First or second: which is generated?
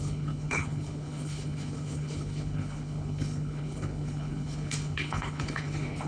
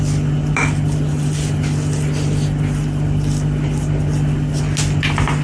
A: first